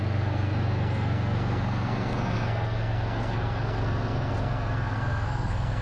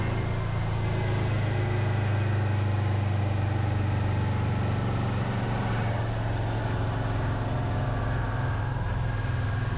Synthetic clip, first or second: first